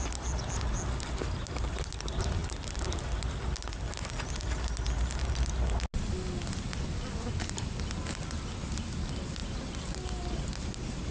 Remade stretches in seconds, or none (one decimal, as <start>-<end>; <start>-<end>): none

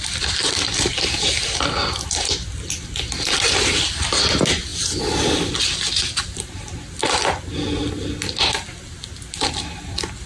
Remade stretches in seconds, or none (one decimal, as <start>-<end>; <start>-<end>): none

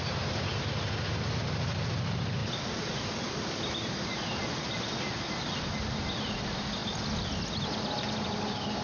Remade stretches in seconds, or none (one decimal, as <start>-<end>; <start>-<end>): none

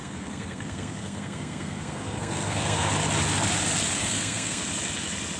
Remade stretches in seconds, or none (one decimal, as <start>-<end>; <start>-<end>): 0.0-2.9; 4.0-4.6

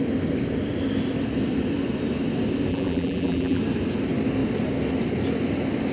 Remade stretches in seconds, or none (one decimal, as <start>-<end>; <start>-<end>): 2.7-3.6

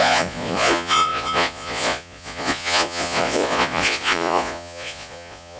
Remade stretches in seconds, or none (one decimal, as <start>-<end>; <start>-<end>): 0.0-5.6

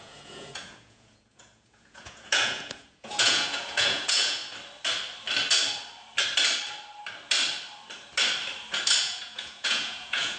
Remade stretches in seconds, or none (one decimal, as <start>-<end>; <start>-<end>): 0.0-4.4; 9.0-10.4

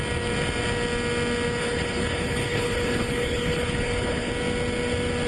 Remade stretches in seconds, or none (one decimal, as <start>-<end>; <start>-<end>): 1.6-4.3